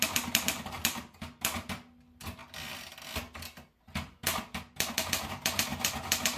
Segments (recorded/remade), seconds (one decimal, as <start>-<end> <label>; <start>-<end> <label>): 0.0-5.7 recorded; 5.7-6.4 remade